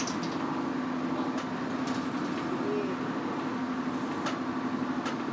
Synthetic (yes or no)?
no